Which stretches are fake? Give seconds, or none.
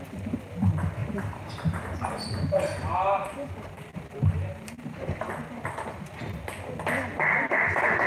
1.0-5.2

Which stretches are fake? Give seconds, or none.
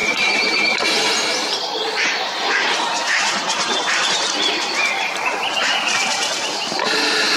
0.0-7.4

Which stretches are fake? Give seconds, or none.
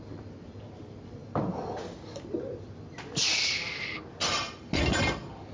none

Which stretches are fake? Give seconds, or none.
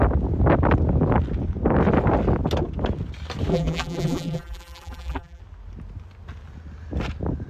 3.5-5.4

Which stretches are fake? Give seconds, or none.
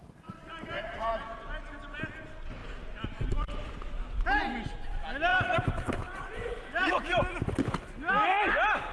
0.0-1.1; 5.3-6.9